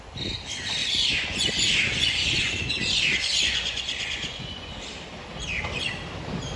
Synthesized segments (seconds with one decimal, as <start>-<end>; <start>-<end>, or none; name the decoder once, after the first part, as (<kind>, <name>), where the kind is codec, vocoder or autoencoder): 0.8-4.8 (vocoder, Vocos)